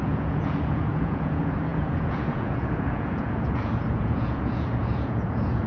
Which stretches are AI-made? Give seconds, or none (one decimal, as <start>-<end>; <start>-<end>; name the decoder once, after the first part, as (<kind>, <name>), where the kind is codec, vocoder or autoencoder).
0.0-5.7 (vocoder, Vocos)